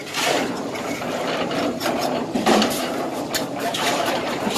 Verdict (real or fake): fake